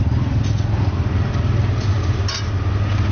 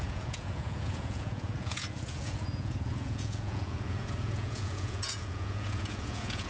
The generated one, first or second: second